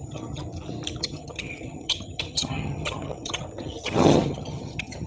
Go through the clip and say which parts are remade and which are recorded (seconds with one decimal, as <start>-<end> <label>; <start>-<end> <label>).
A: 0.0-0.4 remade; 0.4-1.0 recorded; 1.0-5.1 remade